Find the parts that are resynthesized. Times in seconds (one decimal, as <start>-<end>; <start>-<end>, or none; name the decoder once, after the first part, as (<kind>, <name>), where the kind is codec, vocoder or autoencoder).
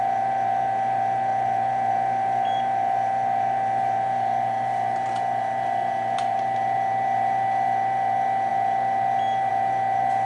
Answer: none